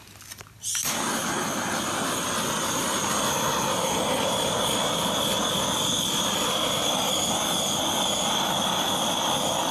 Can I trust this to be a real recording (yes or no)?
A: yes